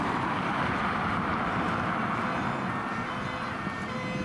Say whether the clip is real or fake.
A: real